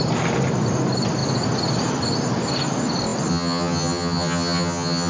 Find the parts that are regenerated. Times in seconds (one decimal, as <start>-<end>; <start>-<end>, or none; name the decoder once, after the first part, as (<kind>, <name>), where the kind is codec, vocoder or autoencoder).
3.3-5.1 (vocoder, HiFi-GAN)